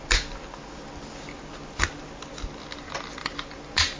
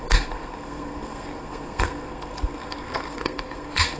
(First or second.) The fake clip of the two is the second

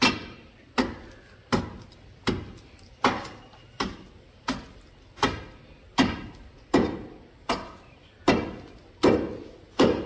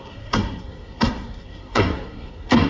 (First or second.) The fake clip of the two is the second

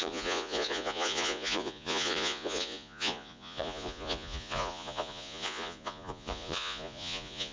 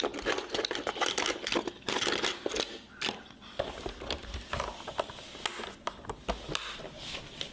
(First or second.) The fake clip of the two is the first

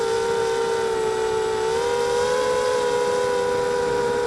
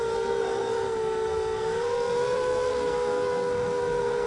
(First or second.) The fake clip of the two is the second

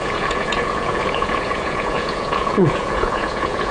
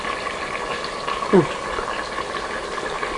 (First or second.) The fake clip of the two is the first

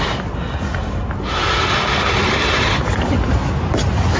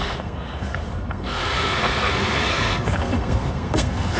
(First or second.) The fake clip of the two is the second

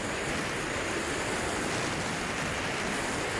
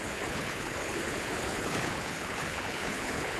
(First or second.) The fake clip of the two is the second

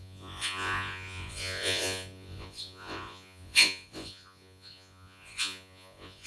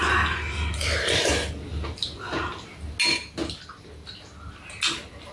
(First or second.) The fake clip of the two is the first